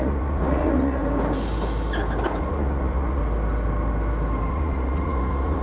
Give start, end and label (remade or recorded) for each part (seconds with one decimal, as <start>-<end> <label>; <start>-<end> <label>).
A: 0.0-1.0 remade; 1.0-2.4 recorded; 2.4-3.2 remade; 3.2-4.5 recorded; 4.5-5.6 remade